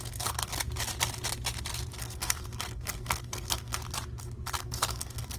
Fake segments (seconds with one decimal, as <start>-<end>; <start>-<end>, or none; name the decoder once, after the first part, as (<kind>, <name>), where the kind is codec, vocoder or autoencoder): 0.0-0.5 (codec, SNAC); 2.0-3.8; 4.6-5.4